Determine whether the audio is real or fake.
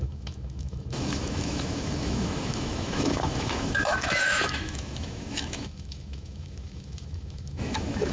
fake